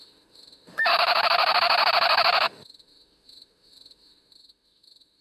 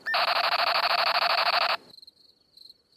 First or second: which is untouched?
second